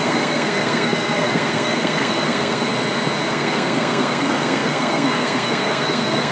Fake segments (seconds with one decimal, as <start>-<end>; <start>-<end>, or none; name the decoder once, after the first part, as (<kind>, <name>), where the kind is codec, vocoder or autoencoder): 0.0-2.7 (codec, SNAC); 3.3-6.3